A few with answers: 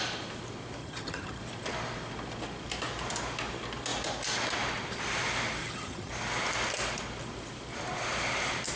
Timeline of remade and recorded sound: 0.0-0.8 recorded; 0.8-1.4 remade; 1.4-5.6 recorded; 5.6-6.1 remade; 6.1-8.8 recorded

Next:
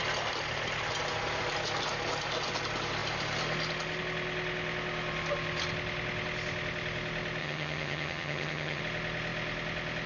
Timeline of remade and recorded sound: 0.0-7.4 recorded; 7.4-8.8 remade; 8.8-10.1 recorded

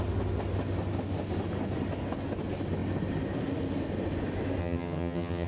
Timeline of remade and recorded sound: 0.0-4.6 recorded; 4.6-5.5 remade